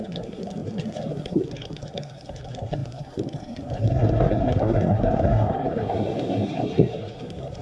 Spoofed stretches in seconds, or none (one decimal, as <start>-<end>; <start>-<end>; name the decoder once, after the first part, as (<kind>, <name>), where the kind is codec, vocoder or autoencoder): 0.0-7.6 (codec, SNAC)